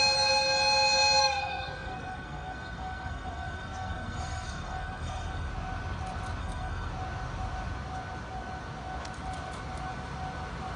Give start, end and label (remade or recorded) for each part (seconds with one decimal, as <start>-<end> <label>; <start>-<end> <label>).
0.0-1.2 recorded; 1.2-5.5 remade; 5.5-6.4 recorded; 6.4-6.9 remade; 6.9-10.8 recorded